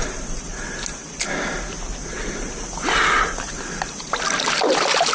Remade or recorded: recorded